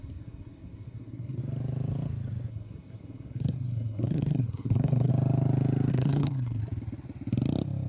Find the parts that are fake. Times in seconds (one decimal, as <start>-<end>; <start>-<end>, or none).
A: 0.0-1.4; 2.5-5.1; 5.9-6.6